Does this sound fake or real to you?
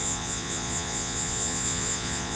fake